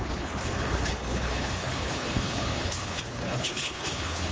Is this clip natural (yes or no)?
no